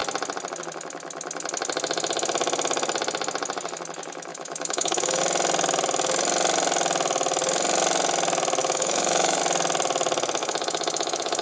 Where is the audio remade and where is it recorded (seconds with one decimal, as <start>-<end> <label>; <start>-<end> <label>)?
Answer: 0.0-4.3 recorded; 4.3-5.2 remade; 5.2-8.6 recorded; 8.6-9.4 remade; 9.4-10.4 recorded; 10.4-11.4 remade